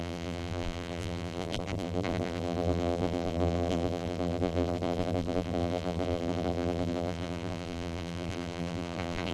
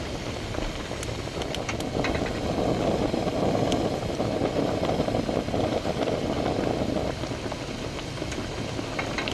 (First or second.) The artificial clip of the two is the first